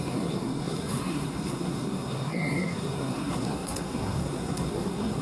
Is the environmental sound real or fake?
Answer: fake